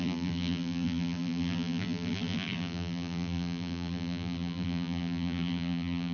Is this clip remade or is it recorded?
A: remade